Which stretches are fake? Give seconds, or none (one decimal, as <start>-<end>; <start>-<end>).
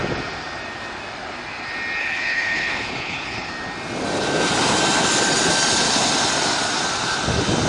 2.0-3.5